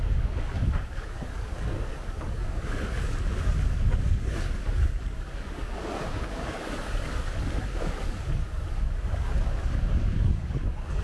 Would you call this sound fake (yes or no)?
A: yes